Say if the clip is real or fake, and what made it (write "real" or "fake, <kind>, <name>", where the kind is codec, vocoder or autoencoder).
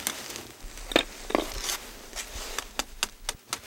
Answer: real